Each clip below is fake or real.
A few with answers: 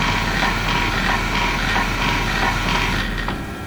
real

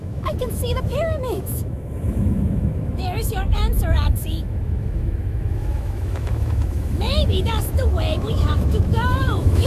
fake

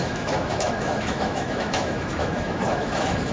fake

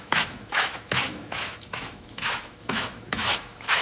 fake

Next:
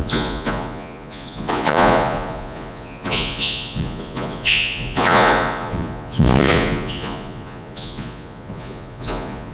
fake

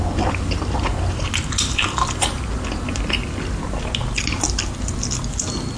real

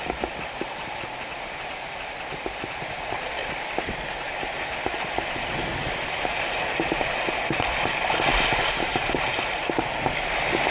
real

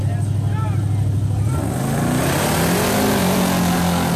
real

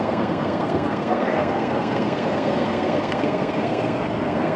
fake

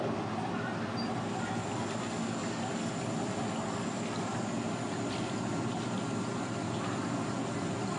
real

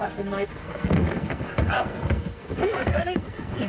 fake